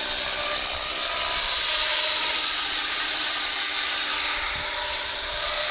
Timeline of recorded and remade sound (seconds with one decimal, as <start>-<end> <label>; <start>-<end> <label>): 0.0-2.2 recorded; 2.2-3.6 remade; 3.6-5.7 recorded